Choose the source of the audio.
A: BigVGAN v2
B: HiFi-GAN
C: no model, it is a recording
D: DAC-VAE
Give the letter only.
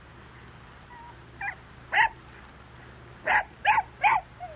C